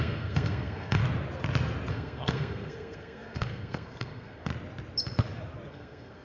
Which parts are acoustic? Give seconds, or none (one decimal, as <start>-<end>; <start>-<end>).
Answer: 1.0-1.9; 4.5-5.7